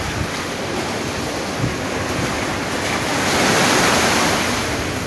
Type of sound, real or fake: real